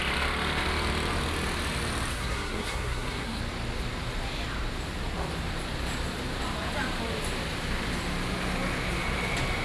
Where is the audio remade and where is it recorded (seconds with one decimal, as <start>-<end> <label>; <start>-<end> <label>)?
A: 0.0-2.1 recorded; 2.1-3.4 remade; 3.4-9.6 recorded